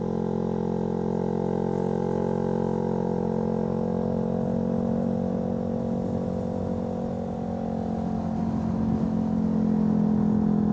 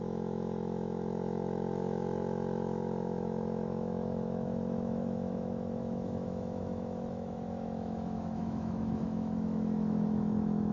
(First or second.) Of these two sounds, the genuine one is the first